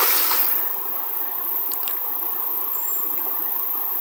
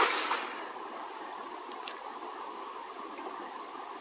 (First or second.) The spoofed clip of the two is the first